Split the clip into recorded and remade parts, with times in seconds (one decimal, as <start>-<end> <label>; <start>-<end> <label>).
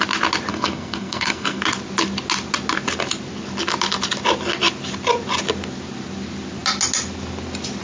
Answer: 0.0-0.5 recorded; 0.5-1.6 remade; 1.6-7.8 recorded